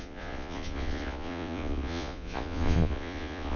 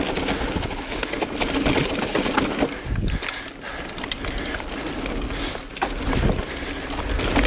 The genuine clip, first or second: second